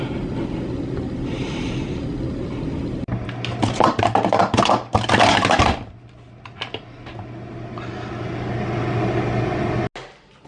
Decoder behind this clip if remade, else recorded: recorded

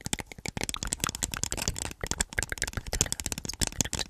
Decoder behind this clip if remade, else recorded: recorded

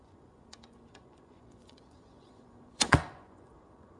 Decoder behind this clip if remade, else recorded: remade, vocoder, Vocos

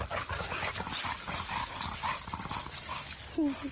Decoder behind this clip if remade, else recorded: recorded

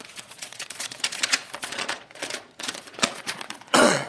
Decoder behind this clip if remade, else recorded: remade, vocoder, Vocos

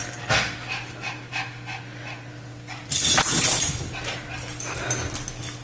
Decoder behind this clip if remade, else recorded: recorded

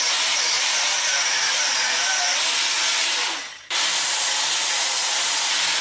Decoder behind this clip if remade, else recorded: recorded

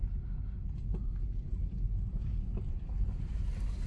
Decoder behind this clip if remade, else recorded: recorded